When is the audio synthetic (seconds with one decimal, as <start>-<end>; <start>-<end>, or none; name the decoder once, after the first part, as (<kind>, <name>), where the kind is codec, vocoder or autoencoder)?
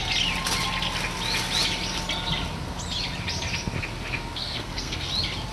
4.2-5.1 (codec, SNAC)